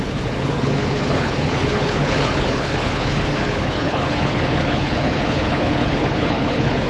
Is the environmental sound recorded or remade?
remade